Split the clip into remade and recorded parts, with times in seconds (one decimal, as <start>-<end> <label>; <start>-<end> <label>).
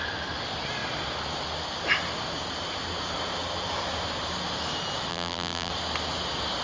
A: 0.0-5.1 recorded; 5.1-5.7 remade; 5.7-6.6 recorded